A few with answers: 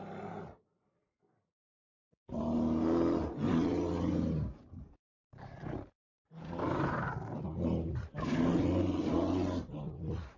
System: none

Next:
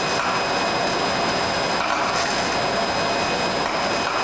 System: none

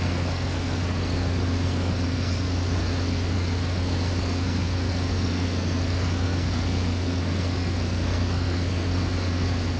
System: codec, SNAC